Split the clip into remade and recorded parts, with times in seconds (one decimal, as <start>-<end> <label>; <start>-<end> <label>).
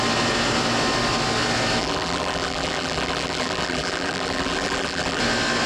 0.0-1.8 recorded; 1.8-5.2 remade; 5.2-5.7 recorded